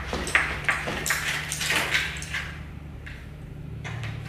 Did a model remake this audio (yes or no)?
yes